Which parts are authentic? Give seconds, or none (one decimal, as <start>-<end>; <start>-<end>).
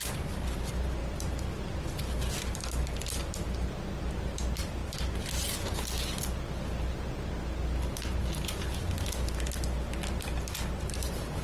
0.0-11.4